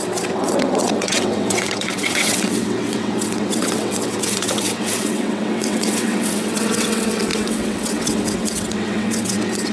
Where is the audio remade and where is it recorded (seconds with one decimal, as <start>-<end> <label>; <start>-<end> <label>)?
0.0-9.7 remade